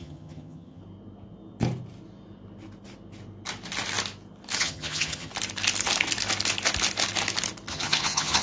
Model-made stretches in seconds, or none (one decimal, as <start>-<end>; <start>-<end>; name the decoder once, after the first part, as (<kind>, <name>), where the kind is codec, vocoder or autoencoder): 0.0-0.8 (vocoder, HiFi-GAN); 4.6-5.3; 7.7-8.4